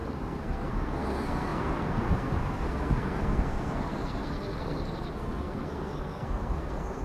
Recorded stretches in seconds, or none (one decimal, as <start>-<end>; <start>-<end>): none